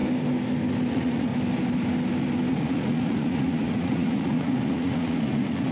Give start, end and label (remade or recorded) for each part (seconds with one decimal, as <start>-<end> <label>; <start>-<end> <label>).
0.0-0.9 recorded; 0.9-1.3 remade; 1.3-2.5 recorded; 2.5-5.7 remade